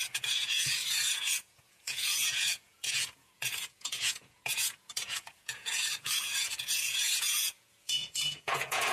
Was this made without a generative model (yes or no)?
no